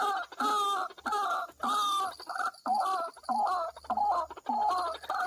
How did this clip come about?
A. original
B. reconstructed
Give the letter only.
A